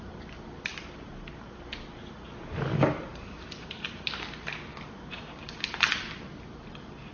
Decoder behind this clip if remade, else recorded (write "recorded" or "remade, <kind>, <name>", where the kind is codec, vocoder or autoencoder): recorded